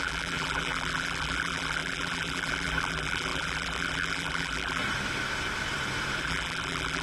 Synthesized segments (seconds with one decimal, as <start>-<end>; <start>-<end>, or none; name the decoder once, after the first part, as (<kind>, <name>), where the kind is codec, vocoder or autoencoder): 0.0-4.8 (vocoder, BigVGAN v2); 6.2-7.0